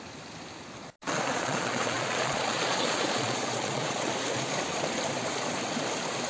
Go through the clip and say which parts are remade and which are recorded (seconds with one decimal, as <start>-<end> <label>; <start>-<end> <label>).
0.0-1.0 recorded; 1.0-4.1 remade; 4.1-6.3 recorded